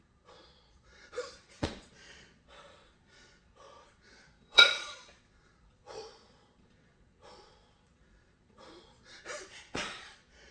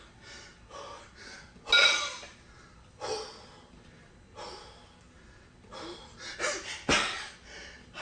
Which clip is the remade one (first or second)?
first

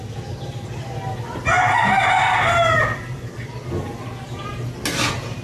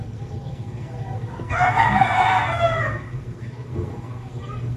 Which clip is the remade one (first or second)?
second